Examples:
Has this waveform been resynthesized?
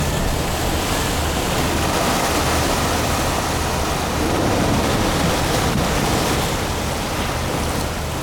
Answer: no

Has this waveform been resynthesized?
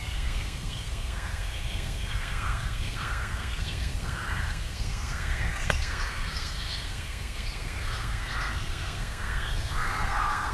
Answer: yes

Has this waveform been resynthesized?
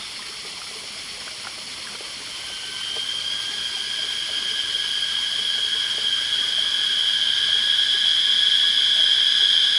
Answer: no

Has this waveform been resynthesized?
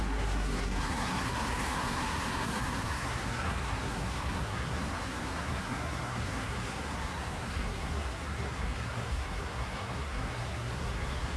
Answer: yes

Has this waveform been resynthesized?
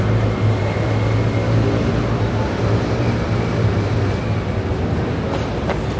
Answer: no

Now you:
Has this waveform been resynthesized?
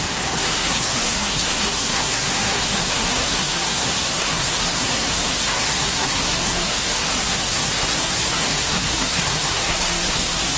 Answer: yes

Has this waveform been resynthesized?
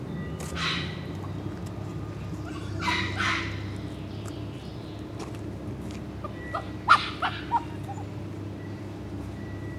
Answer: no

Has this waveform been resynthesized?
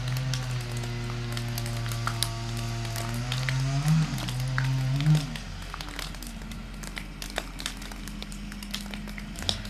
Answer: no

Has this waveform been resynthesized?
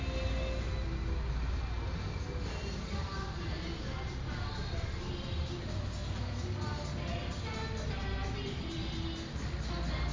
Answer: no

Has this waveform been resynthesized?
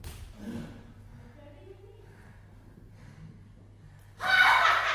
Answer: no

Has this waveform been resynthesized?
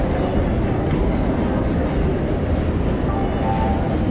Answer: no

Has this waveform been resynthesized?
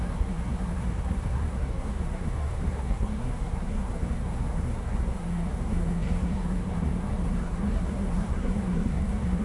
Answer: yes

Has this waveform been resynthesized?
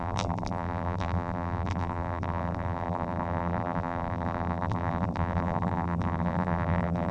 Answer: yes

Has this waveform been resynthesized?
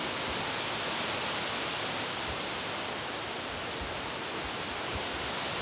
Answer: no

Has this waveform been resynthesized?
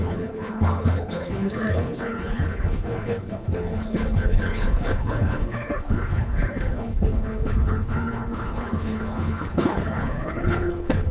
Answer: yes